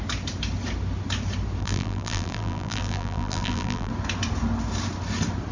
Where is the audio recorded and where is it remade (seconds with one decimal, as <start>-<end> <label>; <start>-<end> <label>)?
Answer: 0.0-1.6 recorded; 1.6-3.9 remade; 3.9-5.5 recorded